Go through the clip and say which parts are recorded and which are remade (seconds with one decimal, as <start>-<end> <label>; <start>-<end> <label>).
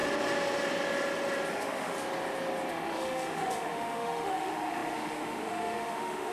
0.0-1.5 recorded; 1.5-1.9 remade; 1.9-2.7 recorded; 2.7-6.3 remade